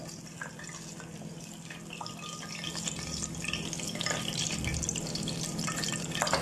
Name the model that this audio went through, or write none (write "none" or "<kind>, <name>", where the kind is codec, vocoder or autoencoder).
none